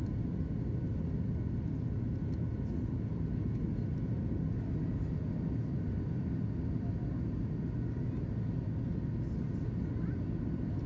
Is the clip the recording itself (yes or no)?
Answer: yes